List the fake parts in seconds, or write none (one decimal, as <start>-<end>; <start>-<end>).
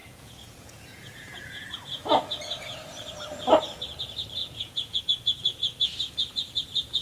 0.0-1.6; 4.4-5.0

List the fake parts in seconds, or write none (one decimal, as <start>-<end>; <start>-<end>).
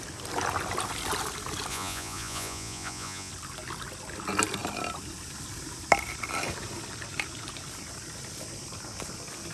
1.7-3.3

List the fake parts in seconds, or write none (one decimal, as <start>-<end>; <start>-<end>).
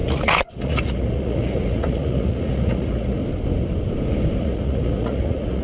0.0-3.2; 4.4-5.6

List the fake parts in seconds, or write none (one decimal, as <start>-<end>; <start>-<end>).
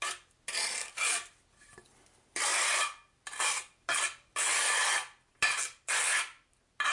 none